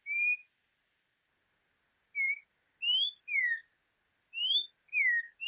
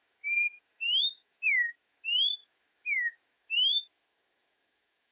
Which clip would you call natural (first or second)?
first